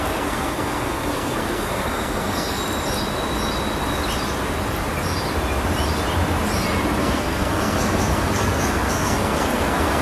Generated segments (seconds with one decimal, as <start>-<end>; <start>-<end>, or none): 0.0-2.6; 7.0-10.0